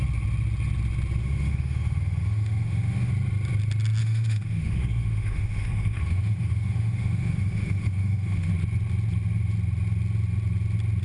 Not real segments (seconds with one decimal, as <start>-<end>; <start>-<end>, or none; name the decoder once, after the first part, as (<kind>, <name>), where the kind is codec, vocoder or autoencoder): 1.2-3.1 (autoencoder, DAC-VAE); 4.0-8.5